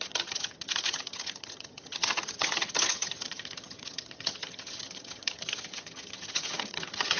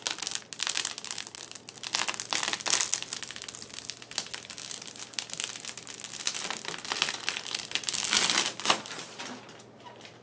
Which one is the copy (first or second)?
first